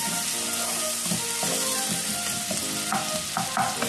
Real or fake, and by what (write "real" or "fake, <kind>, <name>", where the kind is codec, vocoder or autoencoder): real